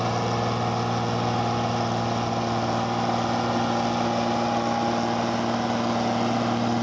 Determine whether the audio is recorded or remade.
recorded